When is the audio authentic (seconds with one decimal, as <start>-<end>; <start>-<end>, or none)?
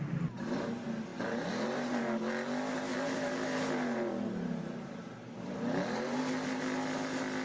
0.0-1.1; 2.0-2.9; 6.2-7.4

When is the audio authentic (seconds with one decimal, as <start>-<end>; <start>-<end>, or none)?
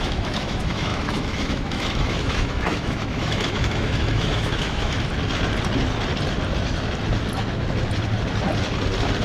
5.1-9.2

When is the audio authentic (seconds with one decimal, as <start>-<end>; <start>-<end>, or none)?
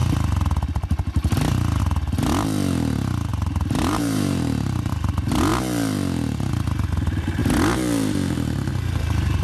0.0-3.3; 4.9-9.4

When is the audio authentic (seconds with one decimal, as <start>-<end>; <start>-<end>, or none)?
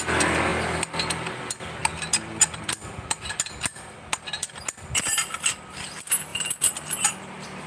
0.0-6.3; 7.1-7.7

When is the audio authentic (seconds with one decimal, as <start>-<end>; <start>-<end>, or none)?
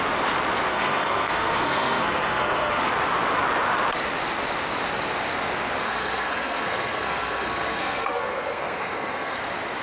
0.0-0.7; 2.9-5.8; 9.4-9.8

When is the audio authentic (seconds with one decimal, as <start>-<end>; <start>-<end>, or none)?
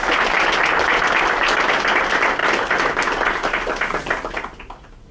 0.0-5.1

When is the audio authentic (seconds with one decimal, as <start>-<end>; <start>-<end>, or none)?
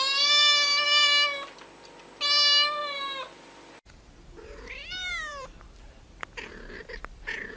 0.0-2.8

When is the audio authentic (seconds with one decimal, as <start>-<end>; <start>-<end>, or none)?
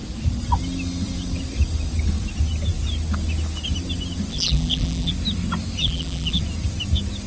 0.0-4.3; 5.1-5.8; 6.4-7.3